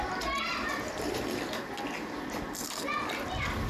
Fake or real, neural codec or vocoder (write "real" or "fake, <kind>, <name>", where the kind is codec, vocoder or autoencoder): real